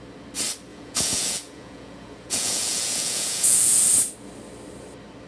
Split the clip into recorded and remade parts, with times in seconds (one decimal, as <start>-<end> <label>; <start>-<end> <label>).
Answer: 0.0-0.7 recorded; 0.7-3.9 remade; 3.9-5.3 recorded